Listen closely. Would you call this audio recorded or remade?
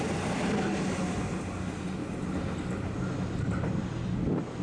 recorded